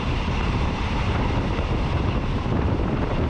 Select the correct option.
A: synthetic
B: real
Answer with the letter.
A